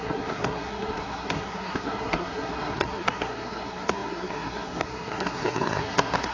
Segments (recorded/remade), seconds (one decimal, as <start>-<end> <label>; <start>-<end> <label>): 0.0-6.3 remade